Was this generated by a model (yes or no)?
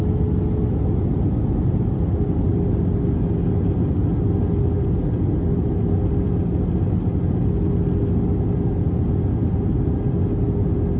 no